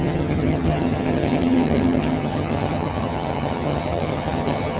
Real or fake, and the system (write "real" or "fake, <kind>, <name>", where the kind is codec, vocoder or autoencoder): fake, vocoder, HiFi-GAN